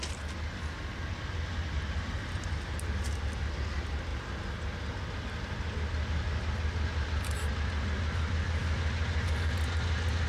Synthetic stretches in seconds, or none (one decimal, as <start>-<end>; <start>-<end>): none